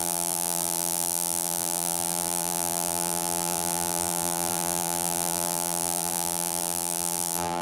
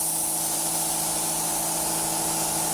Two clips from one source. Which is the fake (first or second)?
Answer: first